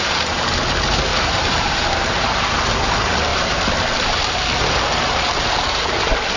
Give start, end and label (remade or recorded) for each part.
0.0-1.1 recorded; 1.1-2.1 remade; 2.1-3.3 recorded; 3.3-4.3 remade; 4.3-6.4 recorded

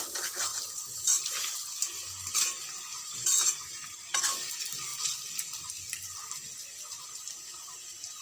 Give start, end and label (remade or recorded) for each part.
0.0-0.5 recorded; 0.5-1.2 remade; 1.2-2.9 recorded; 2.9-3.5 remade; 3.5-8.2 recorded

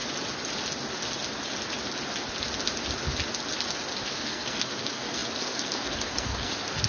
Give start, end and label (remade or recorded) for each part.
0.0-4.1 recorded; 4.1-6.9 remade

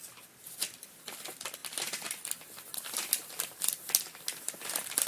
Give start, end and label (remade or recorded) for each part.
0.0-5.1 recorded

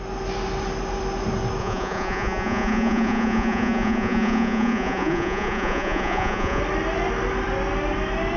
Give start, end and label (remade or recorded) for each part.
0.0-1.6 recorded; 1.6-6.6 remade; 6.6-8.4 recorded

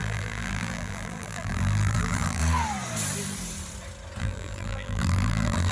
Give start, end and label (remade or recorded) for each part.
0.0-2.4 remade; 2.4-4.2 recorded; 4.2-5.7 remade